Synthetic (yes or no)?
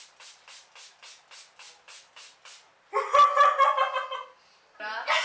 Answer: no